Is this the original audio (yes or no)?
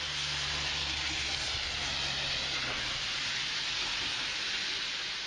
yes